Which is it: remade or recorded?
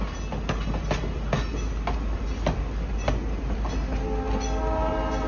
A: recorded